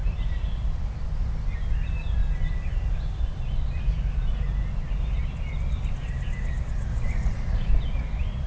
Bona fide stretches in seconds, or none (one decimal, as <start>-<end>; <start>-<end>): 0.0-6.9; 7.7-8.5